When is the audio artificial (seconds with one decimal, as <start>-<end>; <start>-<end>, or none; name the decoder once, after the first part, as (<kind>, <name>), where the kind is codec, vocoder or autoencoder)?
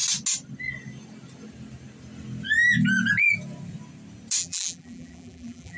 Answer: 4.4-5.8 (vocoder, BigVGAN v2)